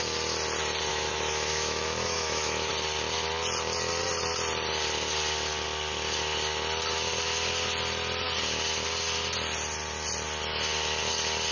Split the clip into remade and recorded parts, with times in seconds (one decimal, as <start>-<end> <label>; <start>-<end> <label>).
0.0-0.9 recorded; 0.9-2.7 remade; 2.7-11.5 recorded